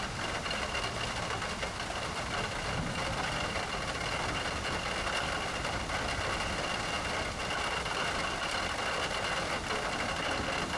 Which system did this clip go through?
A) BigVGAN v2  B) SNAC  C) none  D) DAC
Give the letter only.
C